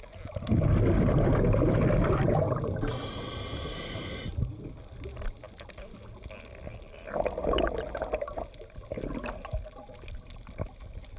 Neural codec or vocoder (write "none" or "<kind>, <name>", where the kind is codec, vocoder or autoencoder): none